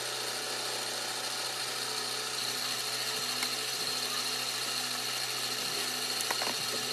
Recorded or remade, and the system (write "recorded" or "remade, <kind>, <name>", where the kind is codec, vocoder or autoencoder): recorded